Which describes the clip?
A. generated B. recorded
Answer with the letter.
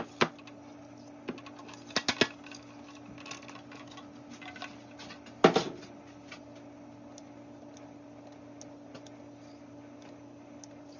B